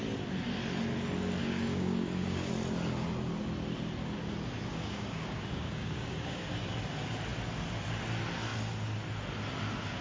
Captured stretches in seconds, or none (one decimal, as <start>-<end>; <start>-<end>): 0.0-1.4; 2.5-4.7; 6.5-10.0